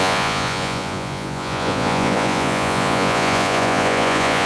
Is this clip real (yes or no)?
no